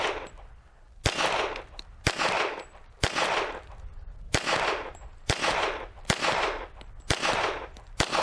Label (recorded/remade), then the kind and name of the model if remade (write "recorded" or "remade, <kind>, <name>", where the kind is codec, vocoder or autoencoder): recorded